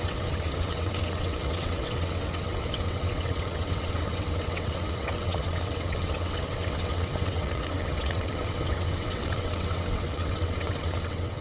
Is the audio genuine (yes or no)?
no